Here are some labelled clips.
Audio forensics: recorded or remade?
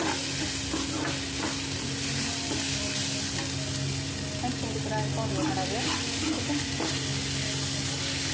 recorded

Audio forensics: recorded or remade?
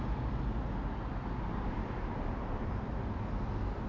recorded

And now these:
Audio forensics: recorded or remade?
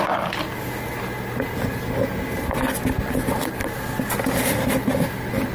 recorded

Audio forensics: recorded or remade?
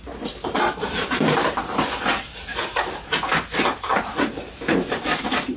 remade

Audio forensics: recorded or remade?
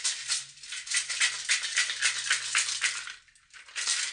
recorded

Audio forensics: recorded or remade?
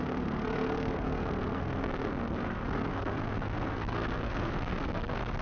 remade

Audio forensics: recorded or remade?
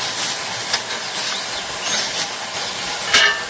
recorded